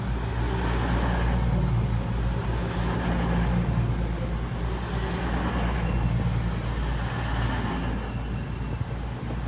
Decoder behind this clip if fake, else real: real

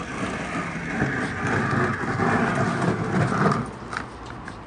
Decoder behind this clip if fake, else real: real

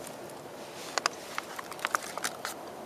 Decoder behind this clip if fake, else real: real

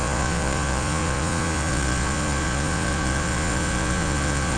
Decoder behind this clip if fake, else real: fake, vocoder, Vocos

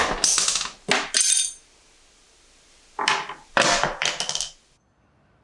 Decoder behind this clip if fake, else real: real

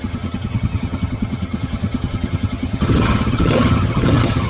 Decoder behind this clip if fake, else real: fake, vocoder, HiFi-GAN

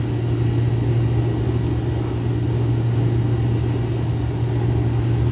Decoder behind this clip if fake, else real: real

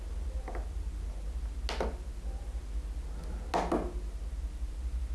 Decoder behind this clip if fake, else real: real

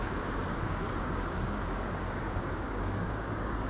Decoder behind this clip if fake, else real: fake, codec, DAC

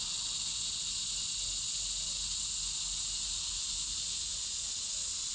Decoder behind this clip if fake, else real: real